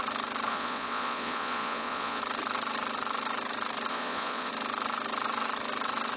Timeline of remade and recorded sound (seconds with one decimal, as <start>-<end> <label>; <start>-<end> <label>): 0.0-0.5 recorded; 0.5-2.2 remade; 2.2-3.9 recorded; 3.9-4.5 remade; 4.5-6.2 recorded